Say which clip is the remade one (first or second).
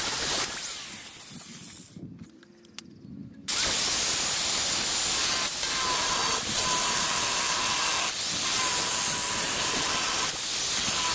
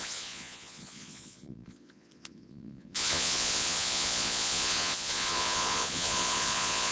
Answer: second